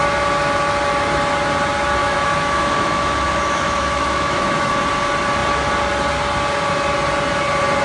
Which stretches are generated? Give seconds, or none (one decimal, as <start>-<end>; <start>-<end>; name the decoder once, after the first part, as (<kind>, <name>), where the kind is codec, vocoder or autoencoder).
2.0-4.7 (autoencoder, DAC-VAE)